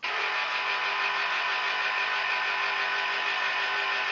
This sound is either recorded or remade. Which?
recorded